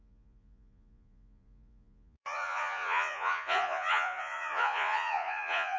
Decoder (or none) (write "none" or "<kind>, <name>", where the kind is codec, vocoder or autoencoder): vocoder, Vocos